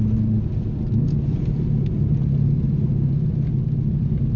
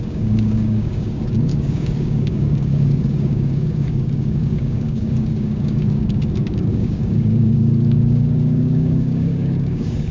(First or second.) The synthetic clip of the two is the second